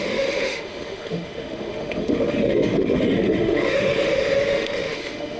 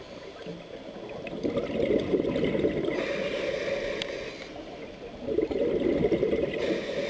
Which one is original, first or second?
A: second